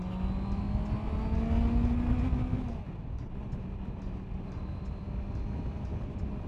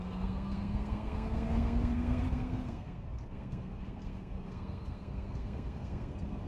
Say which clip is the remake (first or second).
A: second